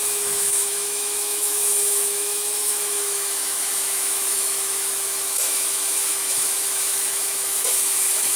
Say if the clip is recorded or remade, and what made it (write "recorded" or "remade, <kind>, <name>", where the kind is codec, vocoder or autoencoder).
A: remade, autoencoder, DAC-VAE